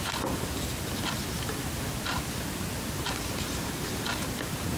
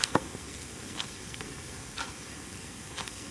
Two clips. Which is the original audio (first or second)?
first